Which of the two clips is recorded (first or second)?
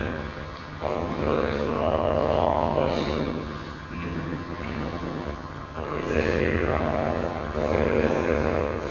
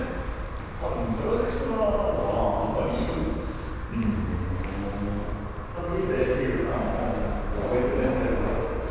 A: second